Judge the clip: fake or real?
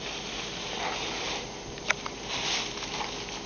real